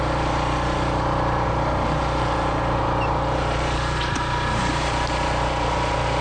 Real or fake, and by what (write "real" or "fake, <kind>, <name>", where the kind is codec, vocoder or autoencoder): fake, vocoder, BigVGAN v2